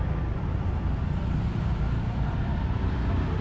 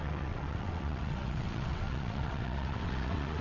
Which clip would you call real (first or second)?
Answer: first